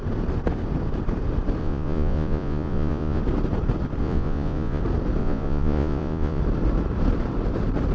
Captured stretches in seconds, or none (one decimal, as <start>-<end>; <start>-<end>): 0.0-1.6; 3.2-4.0; 4.8-5.2; 6.4-7.9